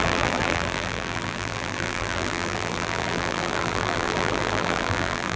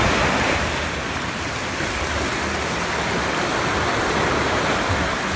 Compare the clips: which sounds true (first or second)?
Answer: second